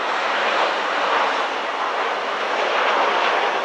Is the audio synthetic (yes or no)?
no